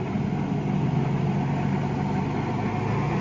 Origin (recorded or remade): recorded